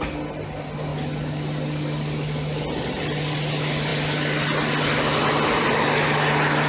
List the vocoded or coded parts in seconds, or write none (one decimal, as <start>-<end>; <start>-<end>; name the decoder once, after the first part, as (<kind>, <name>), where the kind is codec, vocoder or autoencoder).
none